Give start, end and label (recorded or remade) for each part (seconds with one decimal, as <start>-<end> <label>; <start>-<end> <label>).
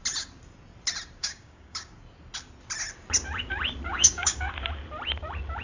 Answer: 0.0-1.2 recorded; 1.2-1.9 remade; 1.9-3.9 recorded; 3.9-4.5 remade; 4.5-5.6 recorded